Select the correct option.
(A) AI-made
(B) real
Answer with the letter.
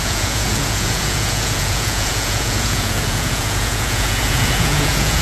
A